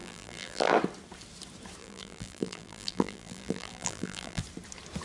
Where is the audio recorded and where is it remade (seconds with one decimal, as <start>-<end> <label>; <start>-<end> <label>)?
0.0-0.7 remade; 0.7-1.8 recorded; 1.8-4.4 remade; 4.4-5.0 recorded